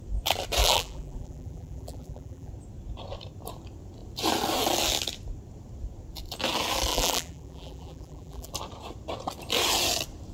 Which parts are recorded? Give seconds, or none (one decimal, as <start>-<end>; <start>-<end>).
0.0-0.6; 2.5-6.9; 8.5-10.3

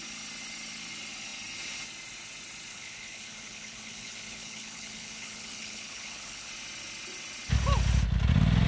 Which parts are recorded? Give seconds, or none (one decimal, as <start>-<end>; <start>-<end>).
0.0-2.7; 6.5-8.7